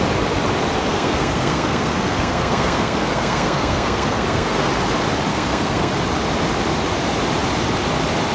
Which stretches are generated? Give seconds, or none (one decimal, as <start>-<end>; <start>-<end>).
0.9-4.7; 5.3-5.9